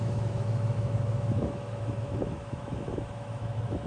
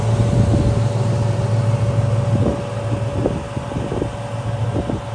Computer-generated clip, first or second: first